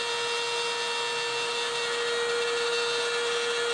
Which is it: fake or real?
real